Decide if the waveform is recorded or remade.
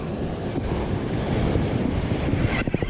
recorded